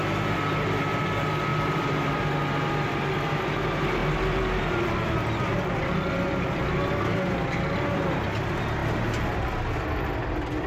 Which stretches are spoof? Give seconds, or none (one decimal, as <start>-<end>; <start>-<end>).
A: 1.5-2.2; 4.0-6.9